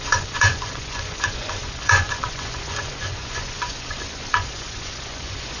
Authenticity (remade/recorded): remade